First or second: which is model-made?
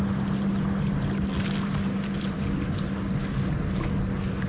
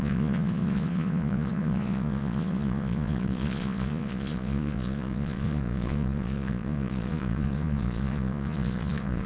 second